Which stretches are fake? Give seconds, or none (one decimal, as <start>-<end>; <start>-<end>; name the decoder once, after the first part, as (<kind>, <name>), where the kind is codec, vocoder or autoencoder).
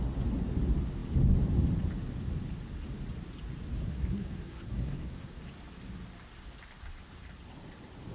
3.8-5.4 (codec, SNAC)